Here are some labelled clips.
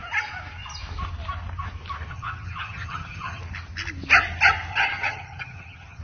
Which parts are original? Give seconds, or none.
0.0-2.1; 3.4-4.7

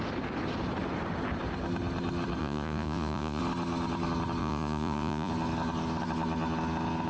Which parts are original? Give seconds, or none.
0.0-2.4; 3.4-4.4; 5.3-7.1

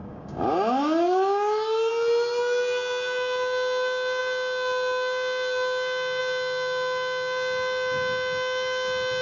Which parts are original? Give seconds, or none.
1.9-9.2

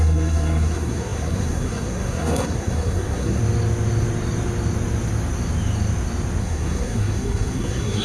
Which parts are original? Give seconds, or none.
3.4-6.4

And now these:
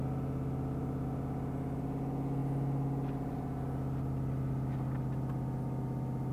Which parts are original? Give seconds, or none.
0.0-6.3

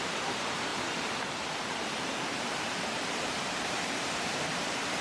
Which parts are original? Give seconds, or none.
0.7-1.5

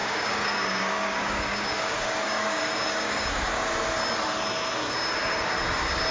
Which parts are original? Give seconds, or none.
3.7-6.1